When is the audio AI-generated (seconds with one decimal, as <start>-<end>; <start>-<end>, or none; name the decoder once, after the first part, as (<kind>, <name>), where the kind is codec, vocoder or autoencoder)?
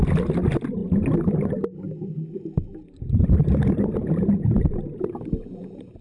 none